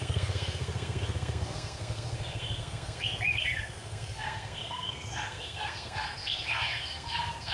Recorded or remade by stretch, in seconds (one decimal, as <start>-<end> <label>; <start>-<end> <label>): 0.0-7.5 remade